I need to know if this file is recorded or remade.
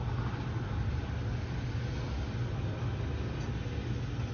recorded